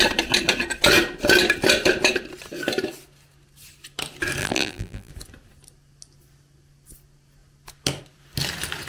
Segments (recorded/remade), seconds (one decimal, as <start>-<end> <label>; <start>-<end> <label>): 0.0-4.4 recorded; 4.4-5.1 remade; 5.1-8.9 recorded